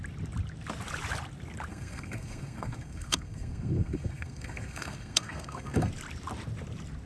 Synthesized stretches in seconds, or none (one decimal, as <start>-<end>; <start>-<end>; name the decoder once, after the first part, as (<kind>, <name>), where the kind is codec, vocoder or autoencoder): 1.7-5.9 (codec, SNAC)